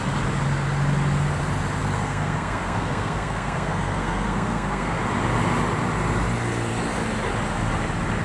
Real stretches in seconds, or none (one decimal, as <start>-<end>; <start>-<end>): 0.0-1.8; 5.0-8.2